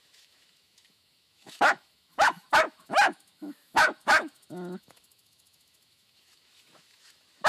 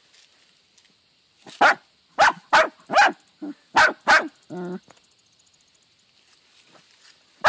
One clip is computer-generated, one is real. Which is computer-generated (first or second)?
first